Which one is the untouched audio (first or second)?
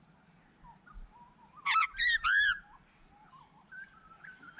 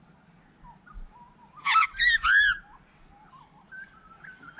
second